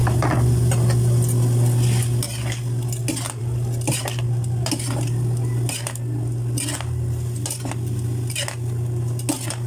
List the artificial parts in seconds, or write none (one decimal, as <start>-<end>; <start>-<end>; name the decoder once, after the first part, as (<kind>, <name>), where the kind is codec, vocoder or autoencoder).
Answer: none